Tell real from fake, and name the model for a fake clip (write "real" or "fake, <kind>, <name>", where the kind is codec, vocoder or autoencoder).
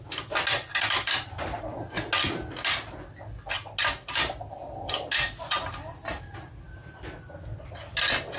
real